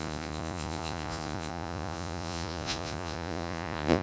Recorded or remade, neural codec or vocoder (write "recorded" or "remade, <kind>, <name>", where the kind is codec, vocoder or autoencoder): remade, vocoder, Vocos